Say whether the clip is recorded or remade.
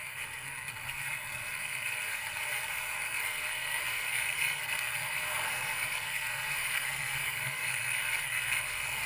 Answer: remade